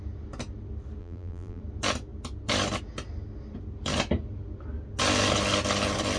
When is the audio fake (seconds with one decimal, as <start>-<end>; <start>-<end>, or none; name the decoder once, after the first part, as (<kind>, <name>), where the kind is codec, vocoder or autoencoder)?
1.0-1.6 (vocoder, BigVGAN v2)